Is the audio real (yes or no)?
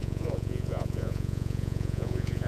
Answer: no